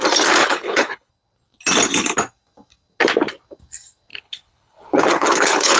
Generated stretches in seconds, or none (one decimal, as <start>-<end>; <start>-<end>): 0.4-1.1; 4.1-5.8

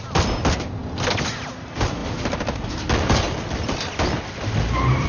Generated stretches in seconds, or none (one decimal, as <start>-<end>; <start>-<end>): none